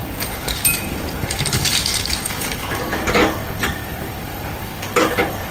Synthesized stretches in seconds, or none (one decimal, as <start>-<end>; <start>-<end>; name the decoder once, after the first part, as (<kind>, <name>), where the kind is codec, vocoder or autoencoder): 0.0-5.5 (codec, DAC)